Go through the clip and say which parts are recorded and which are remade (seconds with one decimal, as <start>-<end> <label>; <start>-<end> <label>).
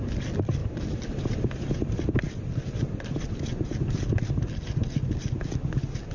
0.0-6.1 recorded